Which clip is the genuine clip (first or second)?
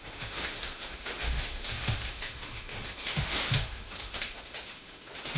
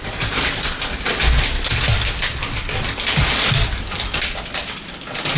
second